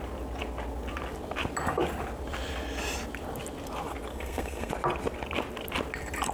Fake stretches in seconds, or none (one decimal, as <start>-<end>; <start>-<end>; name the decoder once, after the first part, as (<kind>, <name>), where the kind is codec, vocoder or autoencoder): 4.1-4.7 (codec, SNAC)